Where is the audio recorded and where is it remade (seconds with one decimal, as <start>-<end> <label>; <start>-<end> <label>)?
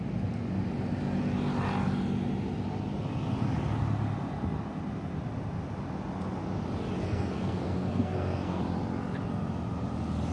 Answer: 0.0-7.0 recorded; 7.0-8.6 remade; 8.6-10.3 recorded